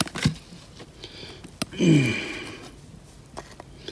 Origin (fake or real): real